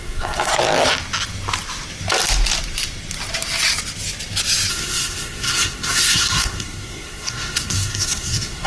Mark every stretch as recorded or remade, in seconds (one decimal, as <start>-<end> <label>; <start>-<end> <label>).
0.0-0.5 remade; 0.5-4.7 recorded; 4.7-8.7 remade